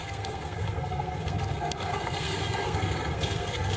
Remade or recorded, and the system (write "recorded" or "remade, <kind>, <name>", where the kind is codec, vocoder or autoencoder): remade, codec, SNAC